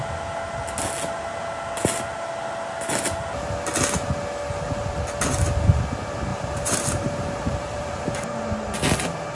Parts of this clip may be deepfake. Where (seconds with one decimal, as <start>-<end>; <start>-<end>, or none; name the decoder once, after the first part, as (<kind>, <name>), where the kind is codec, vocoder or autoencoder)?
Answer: 6.3-8.1 (vocoder, BigVGAN v2)